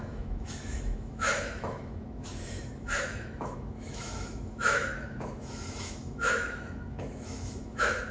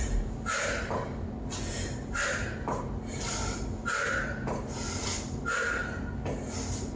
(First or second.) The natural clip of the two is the second